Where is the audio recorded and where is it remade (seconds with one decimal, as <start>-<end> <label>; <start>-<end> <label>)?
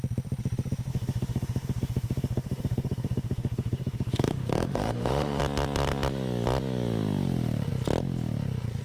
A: 0.0-0.9 recorded; 0.9-5.4 remade; 5.4-8.8 recorded